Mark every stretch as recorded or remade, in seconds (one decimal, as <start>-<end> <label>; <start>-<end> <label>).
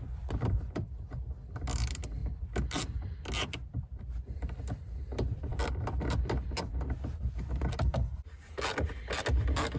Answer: 0.0-9.8 recorded